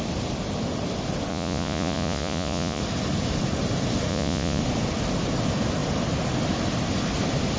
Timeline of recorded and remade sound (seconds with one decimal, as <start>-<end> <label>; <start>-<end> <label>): 0.0-1.3 recorded; 1.3-2.8 remade; 2.8-4.1 recorded; 4.1-4.6 remade; 4.6-7.6 recorded